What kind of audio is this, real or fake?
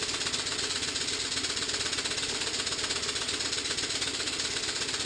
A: real